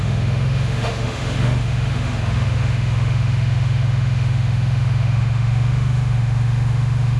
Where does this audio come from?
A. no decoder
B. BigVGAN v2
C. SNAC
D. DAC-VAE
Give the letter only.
D